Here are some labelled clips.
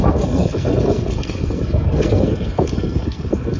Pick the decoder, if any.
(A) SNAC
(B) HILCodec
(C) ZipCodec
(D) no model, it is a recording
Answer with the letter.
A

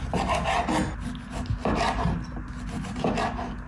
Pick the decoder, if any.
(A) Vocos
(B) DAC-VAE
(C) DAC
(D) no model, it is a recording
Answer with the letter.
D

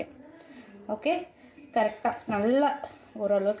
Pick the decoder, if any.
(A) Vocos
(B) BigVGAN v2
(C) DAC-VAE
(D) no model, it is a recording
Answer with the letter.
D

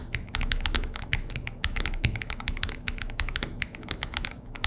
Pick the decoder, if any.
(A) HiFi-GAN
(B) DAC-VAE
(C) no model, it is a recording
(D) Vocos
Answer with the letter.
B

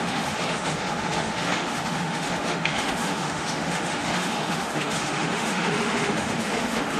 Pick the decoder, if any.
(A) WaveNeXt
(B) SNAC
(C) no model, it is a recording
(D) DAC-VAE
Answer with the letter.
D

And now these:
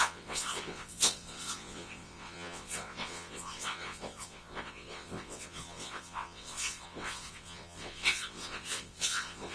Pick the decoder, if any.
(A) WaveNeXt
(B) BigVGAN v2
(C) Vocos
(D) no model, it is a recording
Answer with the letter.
A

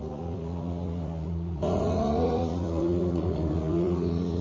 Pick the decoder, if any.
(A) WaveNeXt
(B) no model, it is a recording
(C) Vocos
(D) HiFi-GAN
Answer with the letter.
C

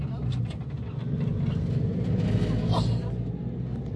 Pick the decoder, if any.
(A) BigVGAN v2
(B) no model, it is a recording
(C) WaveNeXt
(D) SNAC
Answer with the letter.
B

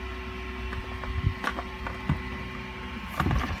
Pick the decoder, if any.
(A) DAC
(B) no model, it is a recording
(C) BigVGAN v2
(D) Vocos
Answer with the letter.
B